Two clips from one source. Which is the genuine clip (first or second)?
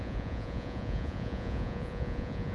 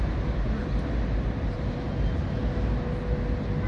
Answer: second